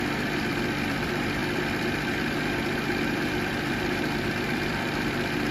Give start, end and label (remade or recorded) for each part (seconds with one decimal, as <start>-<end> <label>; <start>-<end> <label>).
0.0-5.5 remade